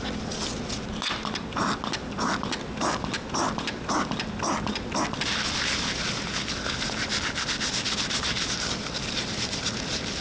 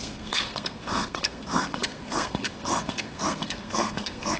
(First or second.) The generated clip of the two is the second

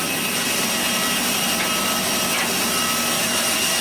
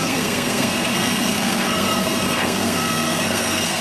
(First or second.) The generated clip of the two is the second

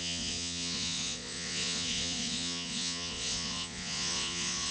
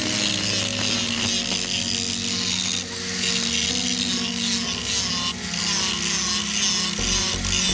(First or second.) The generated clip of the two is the first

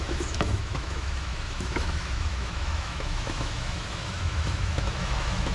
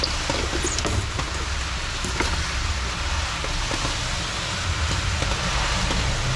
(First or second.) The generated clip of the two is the first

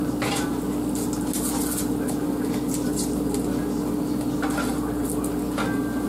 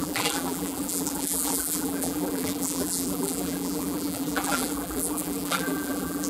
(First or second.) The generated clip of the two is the second